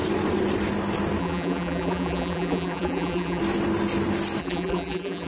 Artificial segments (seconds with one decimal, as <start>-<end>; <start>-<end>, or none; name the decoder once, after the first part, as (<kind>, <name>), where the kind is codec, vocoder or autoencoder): 1.2-3.4 (vocoder, BigVGAN v2); 4.4-5.3